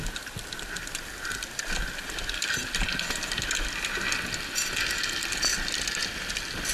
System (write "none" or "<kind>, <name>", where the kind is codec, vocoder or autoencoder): none